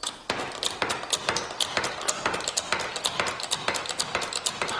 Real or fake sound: real